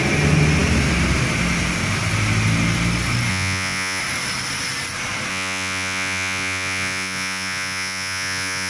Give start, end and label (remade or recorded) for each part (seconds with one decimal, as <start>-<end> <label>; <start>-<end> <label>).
0.0-3.3 recorded; 3.3-4.0 remade; 4.0-5.3 recorded; 5.3-8.7 remade